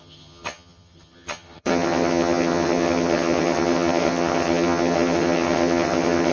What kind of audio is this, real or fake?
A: fake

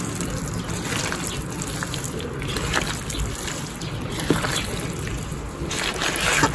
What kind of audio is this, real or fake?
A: real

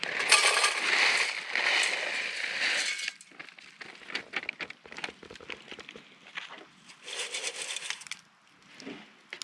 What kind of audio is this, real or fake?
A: real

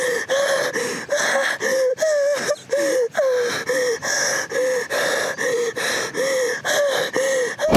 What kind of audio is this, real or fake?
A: real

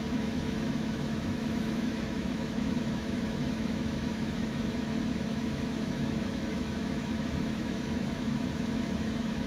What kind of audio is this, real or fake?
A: fake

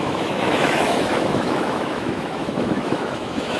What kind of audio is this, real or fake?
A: fake